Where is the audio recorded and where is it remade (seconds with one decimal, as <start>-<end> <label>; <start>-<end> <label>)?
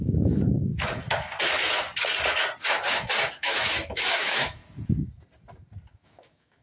0.0-0.7 remade; 0.7-3.3 recorded; 3.3-4.6 remade; 4.6-5.9 recorded; 5.9-6.6 remade